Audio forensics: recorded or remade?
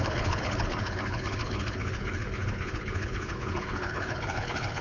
remade